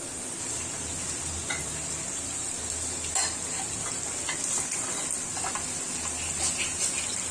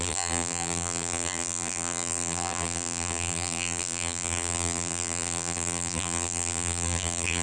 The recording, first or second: first